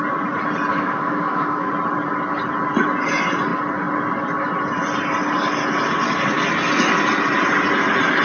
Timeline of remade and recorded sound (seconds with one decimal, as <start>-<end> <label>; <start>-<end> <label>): 0.0-0.7 recorded; 0.7-1.7 remade; 1.7-8.2 recorded